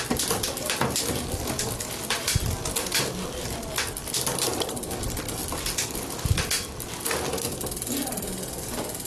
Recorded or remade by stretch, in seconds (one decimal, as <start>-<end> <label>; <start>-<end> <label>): 0.0-5.4 recorded; 5.4-6.4 remade; 6.4-9.1 recorded